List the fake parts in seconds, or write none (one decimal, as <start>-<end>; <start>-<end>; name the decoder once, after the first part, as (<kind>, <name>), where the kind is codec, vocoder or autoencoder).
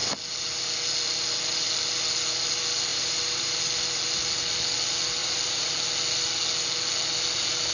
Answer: 2.9-3.6 (vocoder, BigVGAN v2); 5.2-5.7